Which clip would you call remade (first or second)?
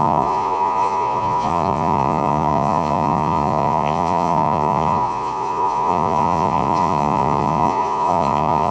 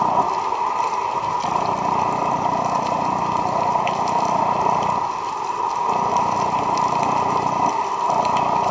first